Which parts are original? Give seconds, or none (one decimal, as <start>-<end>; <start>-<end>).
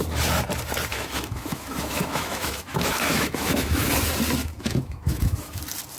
0.0-0.9; 3.9-4.4; 5.6-6.0